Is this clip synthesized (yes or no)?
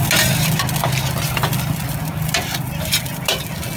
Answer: no